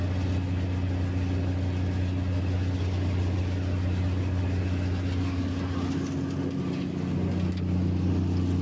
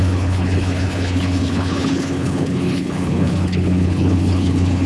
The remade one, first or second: second